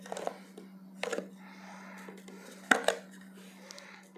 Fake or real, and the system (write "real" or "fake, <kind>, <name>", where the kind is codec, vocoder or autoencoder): real